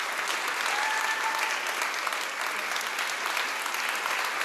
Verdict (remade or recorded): recorded